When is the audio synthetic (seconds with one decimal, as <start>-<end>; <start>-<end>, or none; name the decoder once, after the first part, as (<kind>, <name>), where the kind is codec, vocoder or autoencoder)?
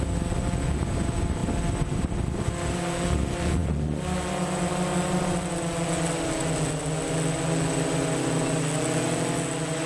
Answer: none